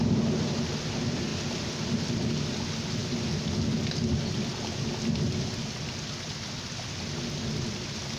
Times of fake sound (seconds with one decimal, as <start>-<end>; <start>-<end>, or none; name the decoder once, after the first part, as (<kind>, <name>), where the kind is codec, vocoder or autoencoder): none